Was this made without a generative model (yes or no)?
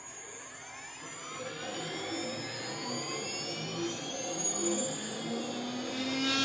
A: yes